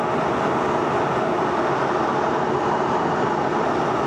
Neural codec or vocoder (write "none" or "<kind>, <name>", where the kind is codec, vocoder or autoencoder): none